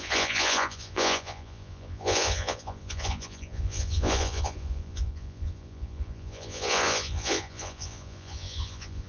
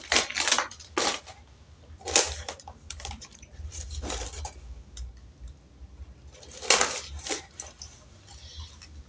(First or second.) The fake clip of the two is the first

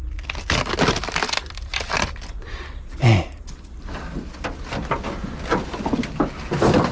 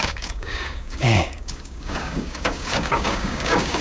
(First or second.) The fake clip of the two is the second